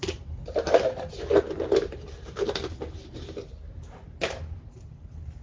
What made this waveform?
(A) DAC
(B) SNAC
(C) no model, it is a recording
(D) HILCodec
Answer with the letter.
C